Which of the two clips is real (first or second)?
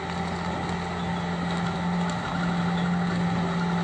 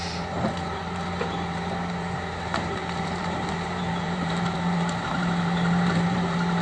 first